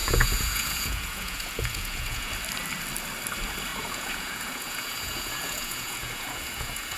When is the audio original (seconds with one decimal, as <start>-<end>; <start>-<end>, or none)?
2.3-3.7